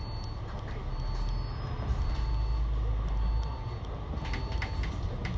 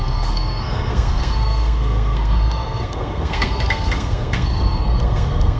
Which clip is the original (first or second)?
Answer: first